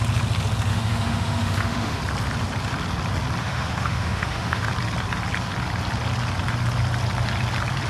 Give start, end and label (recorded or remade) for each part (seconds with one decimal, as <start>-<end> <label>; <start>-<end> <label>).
0.0-0.7 recorded; 0.7-2.0 remade; 2.0-3.4 recorded; 3.4-4.7 remade; 4.7-7.9 recorded